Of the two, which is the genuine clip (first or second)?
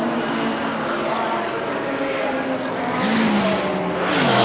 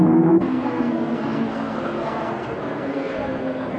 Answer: first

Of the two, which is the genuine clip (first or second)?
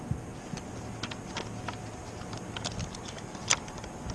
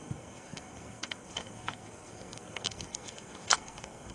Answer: first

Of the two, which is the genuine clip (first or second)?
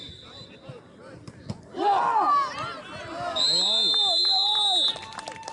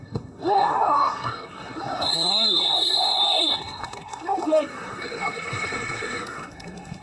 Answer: first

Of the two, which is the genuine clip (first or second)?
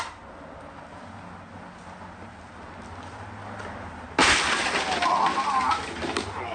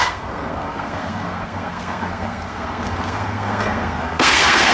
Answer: first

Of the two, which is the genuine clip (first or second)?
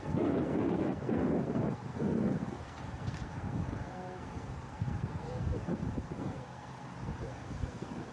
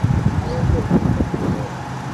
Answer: second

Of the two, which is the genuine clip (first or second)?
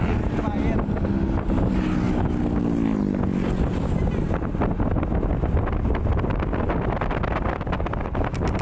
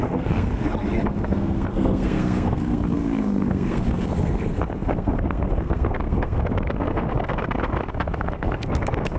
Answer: first